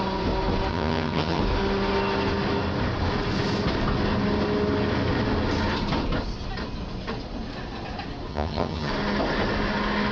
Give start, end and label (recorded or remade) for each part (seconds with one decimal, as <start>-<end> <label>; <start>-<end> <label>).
0.0-0.7 recorded; 0.7-1.4 remade; 1.4-8.3 recorded; 8.3-8.9 remade; 8.9-10.1 recorded